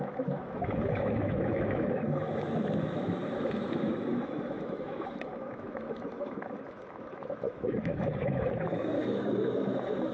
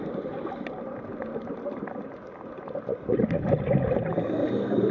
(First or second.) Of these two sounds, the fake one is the first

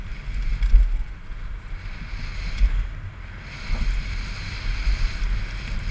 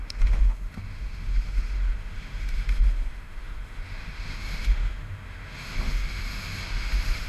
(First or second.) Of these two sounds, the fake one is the second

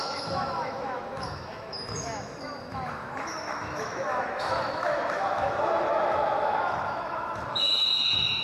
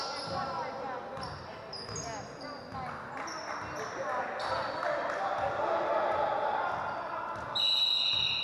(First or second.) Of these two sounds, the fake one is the first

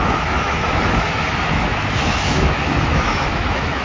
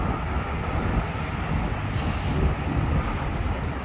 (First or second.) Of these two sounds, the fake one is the first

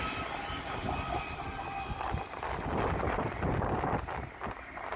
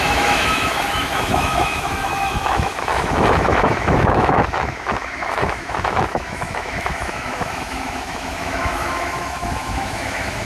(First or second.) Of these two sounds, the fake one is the second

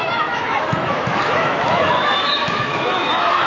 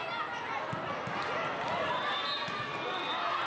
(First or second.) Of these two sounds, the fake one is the first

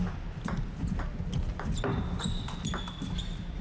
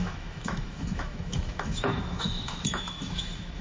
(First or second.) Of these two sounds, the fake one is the second